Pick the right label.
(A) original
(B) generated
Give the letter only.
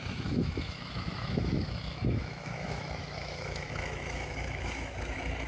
B